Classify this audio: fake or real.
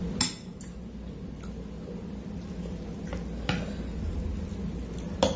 real